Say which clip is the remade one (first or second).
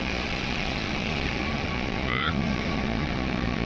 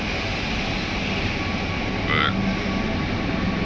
first